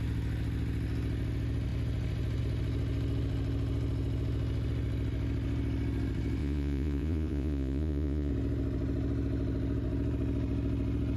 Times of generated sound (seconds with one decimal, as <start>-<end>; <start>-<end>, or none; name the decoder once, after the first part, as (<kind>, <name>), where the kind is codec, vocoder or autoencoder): 6.4-8.3 (vocoder, Vocos)